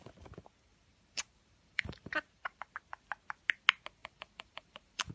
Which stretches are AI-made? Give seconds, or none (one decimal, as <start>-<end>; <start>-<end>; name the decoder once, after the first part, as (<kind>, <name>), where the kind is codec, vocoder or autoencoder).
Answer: 0.7-2.7 (vocoder, BigVGAN v2); 4.0-5.1